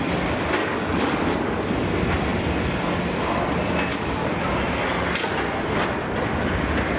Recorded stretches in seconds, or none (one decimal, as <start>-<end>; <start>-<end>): 0.0-0.6; 1.7-3.9; 4.6-7.0